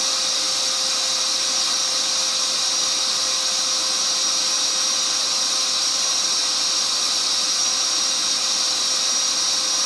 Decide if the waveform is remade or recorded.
recorded